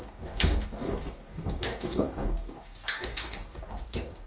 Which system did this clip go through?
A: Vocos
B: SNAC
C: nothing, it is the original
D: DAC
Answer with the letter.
D